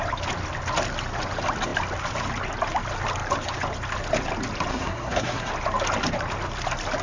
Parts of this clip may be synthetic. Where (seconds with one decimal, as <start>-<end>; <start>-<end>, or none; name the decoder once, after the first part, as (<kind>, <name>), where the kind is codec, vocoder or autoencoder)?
4.7-5.5 (codec, SNAC)